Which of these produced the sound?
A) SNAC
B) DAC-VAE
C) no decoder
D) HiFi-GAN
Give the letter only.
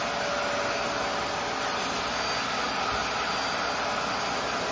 C